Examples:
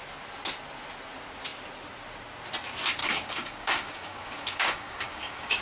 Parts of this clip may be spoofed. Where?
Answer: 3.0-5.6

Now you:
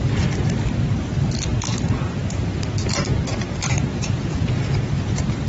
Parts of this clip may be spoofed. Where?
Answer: 3.9-4.7